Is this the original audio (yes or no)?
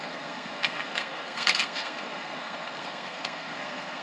no